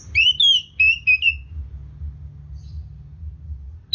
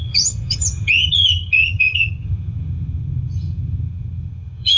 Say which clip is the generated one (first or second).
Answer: second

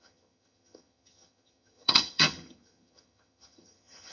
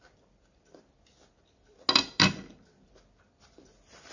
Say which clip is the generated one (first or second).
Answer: first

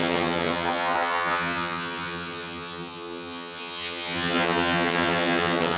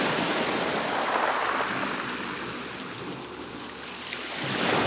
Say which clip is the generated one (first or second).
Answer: first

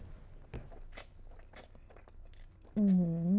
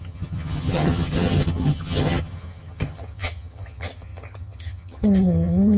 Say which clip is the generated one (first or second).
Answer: second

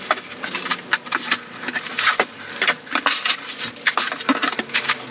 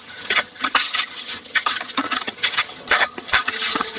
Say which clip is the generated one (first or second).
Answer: second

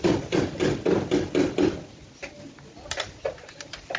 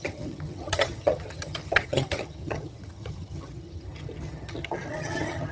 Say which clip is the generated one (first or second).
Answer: second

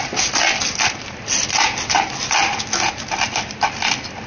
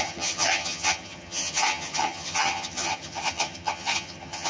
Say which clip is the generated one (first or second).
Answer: second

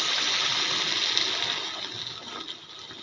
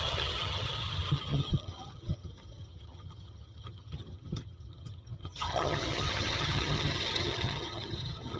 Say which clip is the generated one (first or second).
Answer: second